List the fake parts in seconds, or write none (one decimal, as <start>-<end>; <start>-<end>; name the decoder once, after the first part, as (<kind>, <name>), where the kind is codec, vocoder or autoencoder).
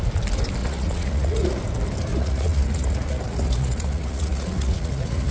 0.6-1.6 (vocoder, Vocos); 2.1-5.3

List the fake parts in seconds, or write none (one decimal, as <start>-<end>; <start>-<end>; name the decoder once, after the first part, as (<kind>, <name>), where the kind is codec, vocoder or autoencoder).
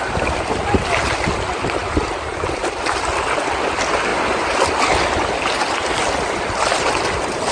none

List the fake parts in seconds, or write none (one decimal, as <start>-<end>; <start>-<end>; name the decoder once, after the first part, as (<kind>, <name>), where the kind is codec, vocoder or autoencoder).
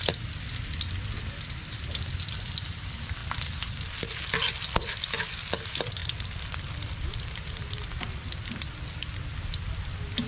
6.0-8.2 (vocoder, BigVGAN v2)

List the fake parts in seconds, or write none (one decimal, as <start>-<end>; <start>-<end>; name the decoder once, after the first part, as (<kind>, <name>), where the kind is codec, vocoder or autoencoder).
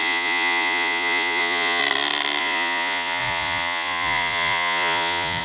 0.0-1.8 (vocoder, Vocos); 2.4-5.4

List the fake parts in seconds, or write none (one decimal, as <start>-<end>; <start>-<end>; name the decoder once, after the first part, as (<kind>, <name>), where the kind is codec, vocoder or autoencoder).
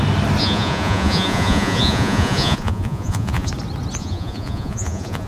0.4-3.5 (vocoder, Vocos); 4.0-5.3